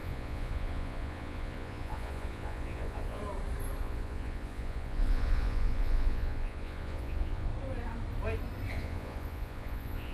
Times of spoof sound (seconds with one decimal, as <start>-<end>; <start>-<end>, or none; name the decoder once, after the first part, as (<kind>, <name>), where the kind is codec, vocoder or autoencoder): 0.0-3.2 (vocoder, Vocos); 3.8-7.5; 8.7-10.1